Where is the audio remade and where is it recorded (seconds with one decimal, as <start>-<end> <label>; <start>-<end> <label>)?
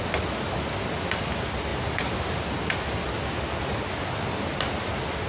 0.0-5.3 recorded